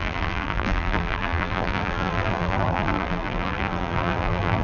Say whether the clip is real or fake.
fake